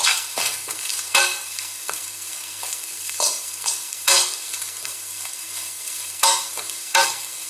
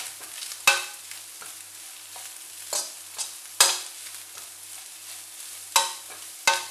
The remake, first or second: first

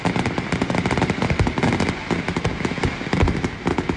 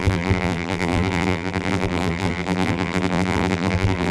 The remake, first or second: second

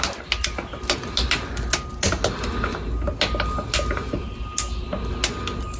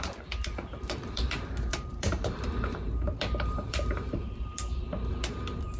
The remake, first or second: second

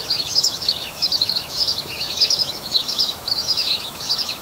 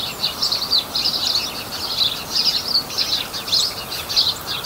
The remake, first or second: first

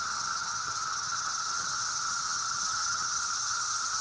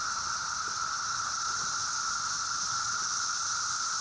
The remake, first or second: first